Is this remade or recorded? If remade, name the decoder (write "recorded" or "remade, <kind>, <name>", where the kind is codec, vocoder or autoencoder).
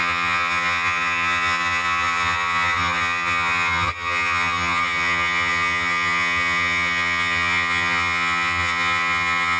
remade, vocoder, HiFi-GAN